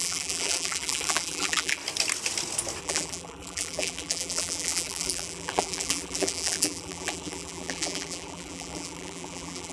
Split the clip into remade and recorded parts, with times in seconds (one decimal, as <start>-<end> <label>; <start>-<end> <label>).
0.0-1.8 remade; 1.8-2.8 recorded; 2.8-9.7 remade